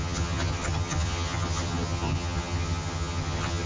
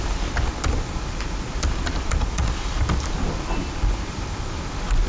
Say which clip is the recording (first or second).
second